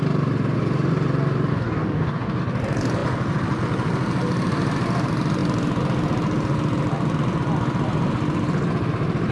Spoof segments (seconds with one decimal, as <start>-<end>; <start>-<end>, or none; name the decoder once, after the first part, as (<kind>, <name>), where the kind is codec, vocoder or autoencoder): 1.5-2.4 (codec, DAC)